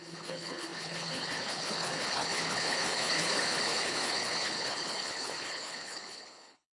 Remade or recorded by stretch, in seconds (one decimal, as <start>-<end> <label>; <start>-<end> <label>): 0.0-6.8 remade